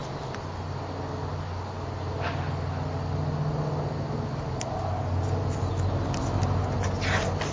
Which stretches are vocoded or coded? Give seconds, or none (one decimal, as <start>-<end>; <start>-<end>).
none